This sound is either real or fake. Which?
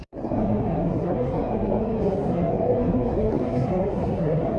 fake